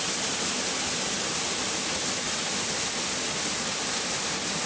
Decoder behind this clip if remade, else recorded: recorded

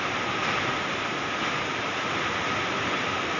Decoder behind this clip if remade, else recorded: recorded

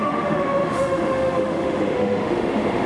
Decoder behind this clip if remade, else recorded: remade, autoencoder, DAC-VAE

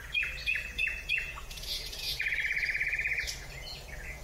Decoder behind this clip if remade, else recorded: remade, vocoder, Vocos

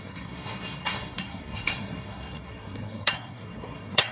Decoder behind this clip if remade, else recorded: remade, codec, SNAC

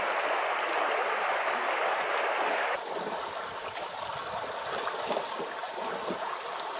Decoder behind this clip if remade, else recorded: recorded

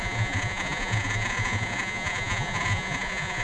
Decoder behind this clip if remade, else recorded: remade, vocoder, Vocos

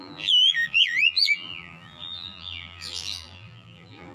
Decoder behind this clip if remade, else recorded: remade, vocoder, BigVGAN v2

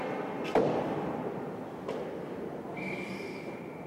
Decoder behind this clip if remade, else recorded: recorded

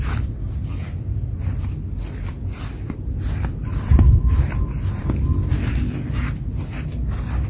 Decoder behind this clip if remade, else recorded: recorded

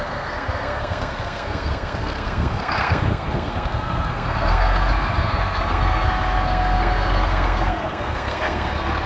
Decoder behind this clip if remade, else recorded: remade, codec, SNAC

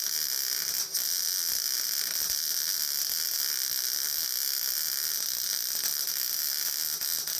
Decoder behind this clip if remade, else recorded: recorded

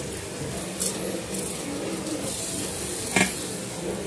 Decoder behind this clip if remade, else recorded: recorded